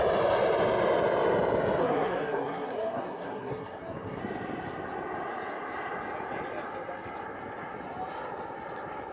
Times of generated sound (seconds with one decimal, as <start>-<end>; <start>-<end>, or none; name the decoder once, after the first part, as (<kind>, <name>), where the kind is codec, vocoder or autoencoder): 1.8-4.2 (codec, SNAC)